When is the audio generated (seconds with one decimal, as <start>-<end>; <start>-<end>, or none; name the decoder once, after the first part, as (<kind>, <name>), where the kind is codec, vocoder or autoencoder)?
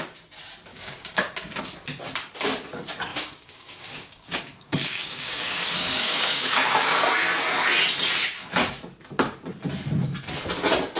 0.7-1.6 (codec, DAC); 3.1-7.1